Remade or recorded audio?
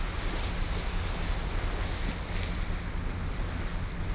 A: recorded